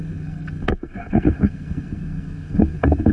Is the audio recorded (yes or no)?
no